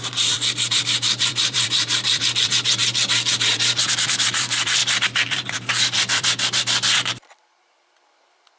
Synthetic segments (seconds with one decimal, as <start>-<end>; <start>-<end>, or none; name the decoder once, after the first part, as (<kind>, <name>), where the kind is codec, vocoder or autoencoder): 0.0-8.6 (vocoder, BigVGAN v2)